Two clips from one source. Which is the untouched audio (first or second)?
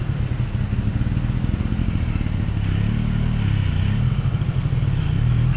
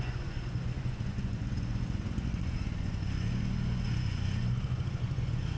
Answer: first